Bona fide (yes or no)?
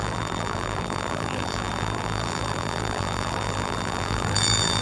no